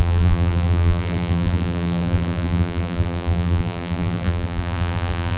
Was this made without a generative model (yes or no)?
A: no